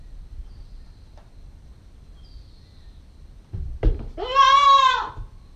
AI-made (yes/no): no